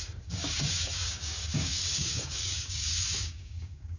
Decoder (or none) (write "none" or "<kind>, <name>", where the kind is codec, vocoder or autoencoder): codec, DAC